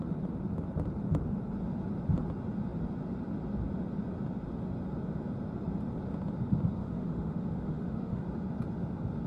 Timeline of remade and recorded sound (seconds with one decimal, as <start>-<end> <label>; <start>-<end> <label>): 0.0-6.8 recorded; 6.8-8.2 remade; 8.2-9.3 recorded